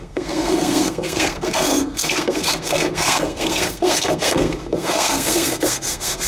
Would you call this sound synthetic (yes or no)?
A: yes